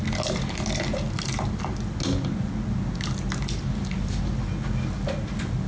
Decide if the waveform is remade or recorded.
recorded